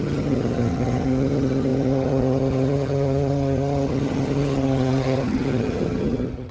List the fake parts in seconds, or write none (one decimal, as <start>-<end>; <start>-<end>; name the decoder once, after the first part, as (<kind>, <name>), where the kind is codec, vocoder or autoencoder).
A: 0.0-6.5 (vocoder, HiFi-GAN)